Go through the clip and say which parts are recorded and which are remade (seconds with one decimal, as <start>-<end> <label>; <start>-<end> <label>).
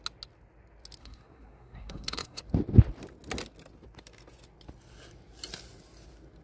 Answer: 0.0-1.0 recorded; 1.0-2.4 remade; 2.4-6.4 recorded